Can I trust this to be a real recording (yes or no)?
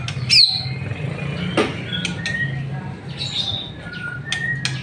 yes